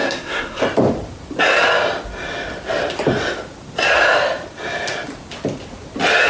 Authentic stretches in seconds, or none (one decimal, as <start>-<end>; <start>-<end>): 0.6-6.3